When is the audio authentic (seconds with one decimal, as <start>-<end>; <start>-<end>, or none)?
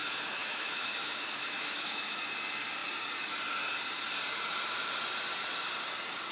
2.3-6.3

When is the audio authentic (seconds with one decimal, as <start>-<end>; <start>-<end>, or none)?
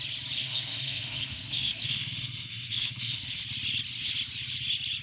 0.0-0.4; 3.4-5.0